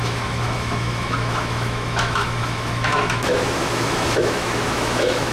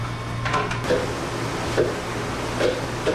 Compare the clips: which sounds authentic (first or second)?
second